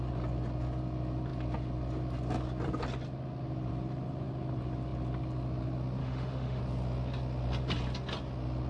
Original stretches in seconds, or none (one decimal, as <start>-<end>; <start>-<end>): 0.0-6.0; 6.6-8.7

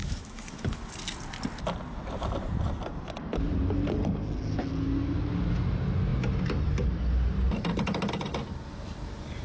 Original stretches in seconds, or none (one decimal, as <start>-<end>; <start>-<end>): 0.8-9.4

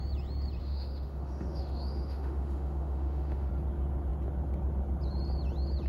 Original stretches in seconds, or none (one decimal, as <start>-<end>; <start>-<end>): 0.0-0.6; 3.5-5.9

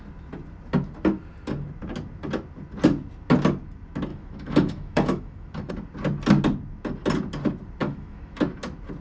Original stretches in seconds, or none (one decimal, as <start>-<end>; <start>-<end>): 0.0-4.1; 5.7-7.8; 8.4-9.0

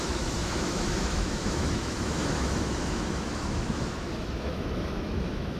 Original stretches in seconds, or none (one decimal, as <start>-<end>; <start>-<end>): none

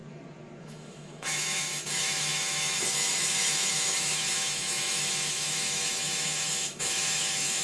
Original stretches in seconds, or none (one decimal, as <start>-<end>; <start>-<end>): 0.0-0.6

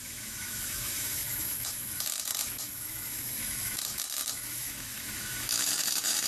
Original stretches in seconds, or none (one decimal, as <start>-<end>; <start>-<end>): none

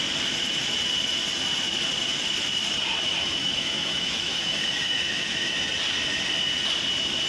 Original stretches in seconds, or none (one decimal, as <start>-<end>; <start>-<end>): 0.0-3.4; 5.5-7.3